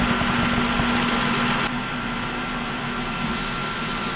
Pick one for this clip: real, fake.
real